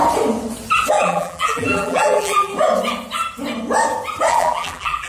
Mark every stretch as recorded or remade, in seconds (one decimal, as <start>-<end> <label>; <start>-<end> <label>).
0.0-0.9 recorded; 0.9-2.5 remade; 2.5-4.3 recorded; 4.3-5.1 remade